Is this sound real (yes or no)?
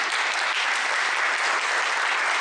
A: yes